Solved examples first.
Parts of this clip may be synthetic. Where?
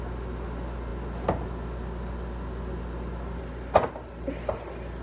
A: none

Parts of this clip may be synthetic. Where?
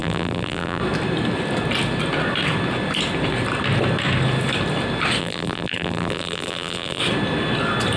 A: 0.0-0.8 (vocoder, BigVGAN v2); 5.2-7.0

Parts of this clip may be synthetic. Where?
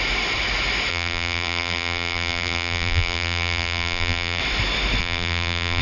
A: 0.9-4.4 (vocoder, BigVGAN v2); 5.0-5.8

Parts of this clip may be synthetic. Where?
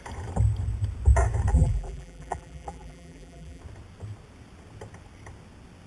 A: 1.5-3.6 (vocoder, BigVGAN v2)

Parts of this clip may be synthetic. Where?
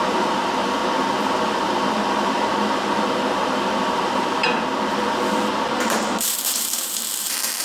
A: 0.0-0.8 (vocoder, BigVGAN v2); 1.3-4.4; 5.8-7.6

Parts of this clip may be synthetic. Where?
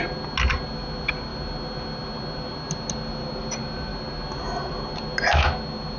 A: none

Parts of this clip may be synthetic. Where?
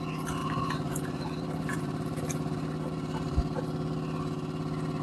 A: 0.4-3.4 (vocoder, BigVGAN v2)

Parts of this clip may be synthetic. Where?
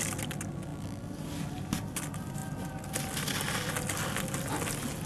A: none